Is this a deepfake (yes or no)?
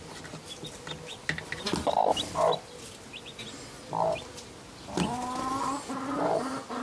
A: no